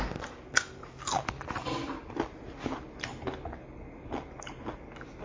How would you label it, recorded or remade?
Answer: recorded